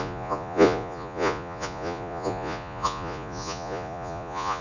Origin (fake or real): fake